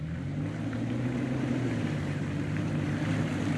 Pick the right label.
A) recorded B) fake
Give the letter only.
A